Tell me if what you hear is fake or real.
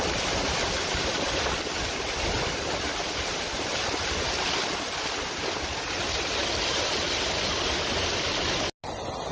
real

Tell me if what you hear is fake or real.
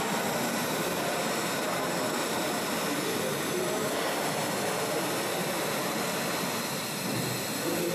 real